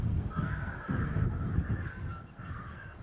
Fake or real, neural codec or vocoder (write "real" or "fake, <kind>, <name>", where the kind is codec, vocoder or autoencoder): fake, codec, SNAC